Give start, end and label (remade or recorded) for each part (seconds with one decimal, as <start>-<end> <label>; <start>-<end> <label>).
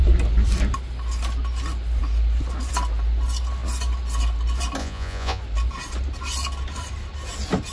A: 0.0-4.8 recorded; 4.8-5.4 remade; 5.4-7.7 recorded